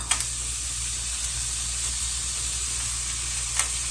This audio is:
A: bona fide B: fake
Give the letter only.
A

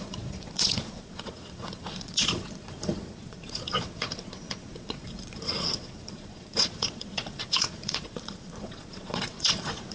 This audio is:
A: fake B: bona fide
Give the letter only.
A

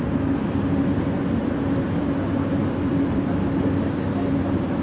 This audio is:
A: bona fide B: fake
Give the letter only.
A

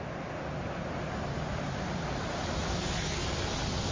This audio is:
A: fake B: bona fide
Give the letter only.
B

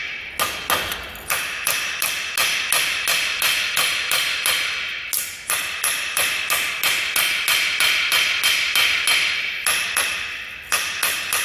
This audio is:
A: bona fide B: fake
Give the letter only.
A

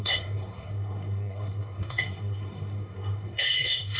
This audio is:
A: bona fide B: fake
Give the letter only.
B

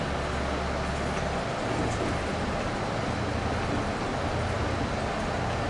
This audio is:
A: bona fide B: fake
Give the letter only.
A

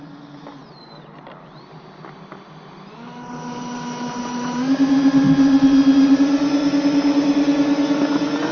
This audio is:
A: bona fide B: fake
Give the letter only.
A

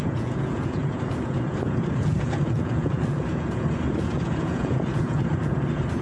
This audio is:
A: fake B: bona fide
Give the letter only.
A